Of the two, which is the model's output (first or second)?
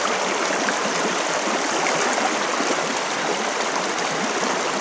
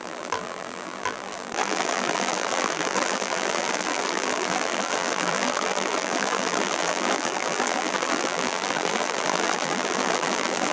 second